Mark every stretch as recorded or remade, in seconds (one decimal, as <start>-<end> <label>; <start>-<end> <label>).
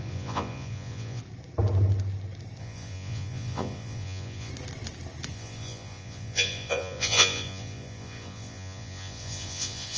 0.0-1.2 remade; 1.2-2.6 recorded; 2.6-4.5 remade; 4.5-5.3 recorded; 5.3-10.0 remade